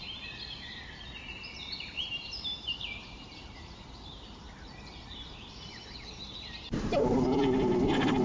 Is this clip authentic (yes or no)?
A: no